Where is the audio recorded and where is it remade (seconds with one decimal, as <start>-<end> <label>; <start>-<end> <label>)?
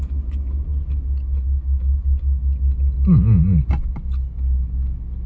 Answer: 0.0-5.3 recorded